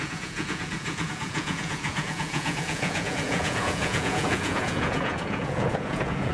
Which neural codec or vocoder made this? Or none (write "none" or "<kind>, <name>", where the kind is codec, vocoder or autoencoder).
vocoder, Vocos